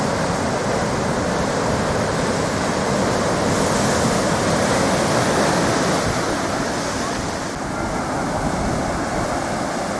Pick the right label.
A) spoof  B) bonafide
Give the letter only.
B